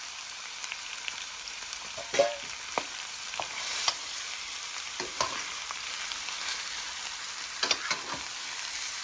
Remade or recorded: remade